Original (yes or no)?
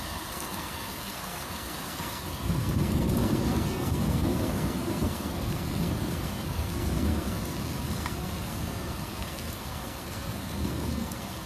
no